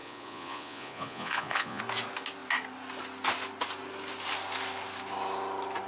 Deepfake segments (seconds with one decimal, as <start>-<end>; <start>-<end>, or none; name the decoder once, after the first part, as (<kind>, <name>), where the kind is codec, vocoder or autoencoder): 0.0-1.8 (vocoder, Vocos)